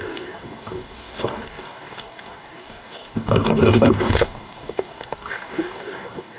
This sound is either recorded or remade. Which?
remade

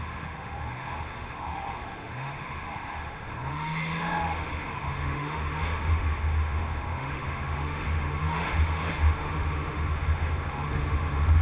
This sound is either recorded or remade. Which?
remade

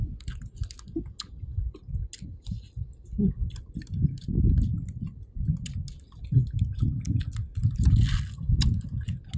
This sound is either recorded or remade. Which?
recorded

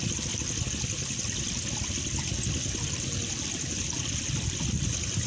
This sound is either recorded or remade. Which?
recorded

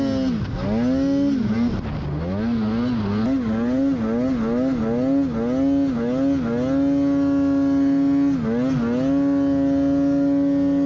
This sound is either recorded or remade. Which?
recorded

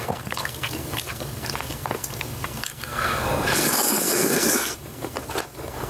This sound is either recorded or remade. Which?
remade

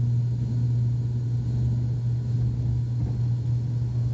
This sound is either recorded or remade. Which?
recorded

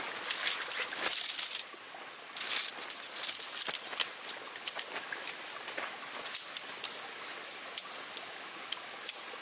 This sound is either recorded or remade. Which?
recorded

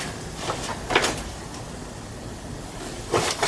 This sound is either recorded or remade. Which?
recorded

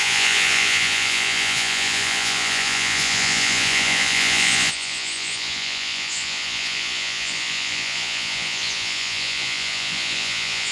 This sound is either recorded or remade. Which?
remade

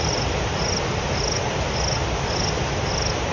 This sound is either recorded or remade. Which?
recorded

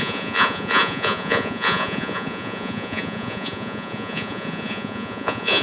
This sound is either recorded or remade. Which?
remade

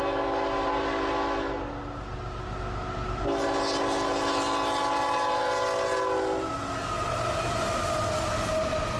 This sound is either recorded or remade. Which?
recorded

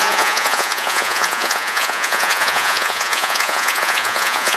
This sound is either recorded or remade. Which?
remade